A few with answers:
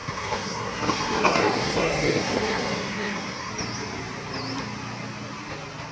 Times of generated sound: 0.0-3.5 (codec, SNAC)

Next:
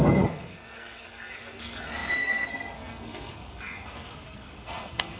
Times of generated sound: 0.0-5.2 (codec, SNAC)